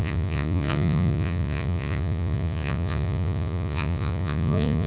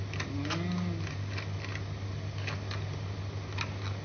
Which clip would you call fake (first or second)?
first